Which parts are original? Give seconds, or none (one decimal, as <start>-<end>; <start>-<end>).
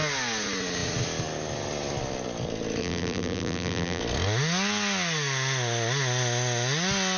0.0-2.8; 4.0-7.2